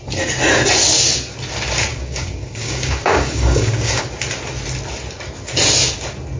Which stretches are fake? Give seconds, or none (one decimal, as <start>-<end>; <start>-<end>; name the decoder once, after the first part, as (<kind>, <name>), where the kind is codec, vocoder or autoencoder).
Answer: 1.9-4.1 (codec, DAC)